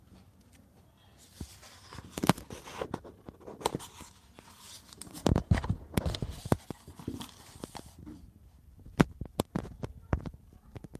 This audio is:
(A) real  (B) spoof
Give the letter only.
A